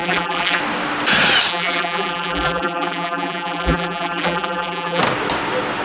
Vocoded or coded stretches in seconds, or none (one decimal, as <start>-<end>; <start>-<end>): 0.0-0.6; 1.5-5.0